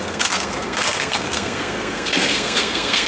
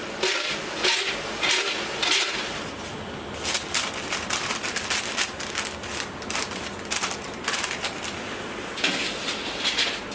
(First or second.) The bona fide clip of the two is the second